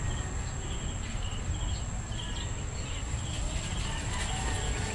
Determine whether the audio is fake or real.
real